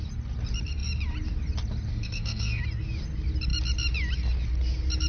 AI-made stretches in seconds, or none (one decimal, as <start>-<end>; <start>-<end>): 1.9-2.6